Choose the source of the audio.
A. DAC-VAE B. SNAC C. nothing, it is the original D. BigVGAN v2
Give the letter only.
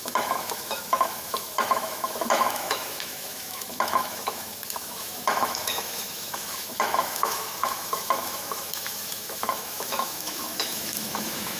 A